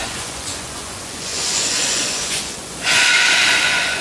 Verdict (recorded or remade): remade